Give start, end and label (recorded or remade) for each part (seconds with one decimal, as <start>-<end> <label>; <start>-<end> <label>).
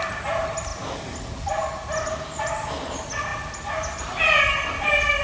0.0-5.2 recorded